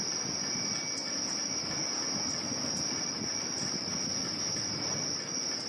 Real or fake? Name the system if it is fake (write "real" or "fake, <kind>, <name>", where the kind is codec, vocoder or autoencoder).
real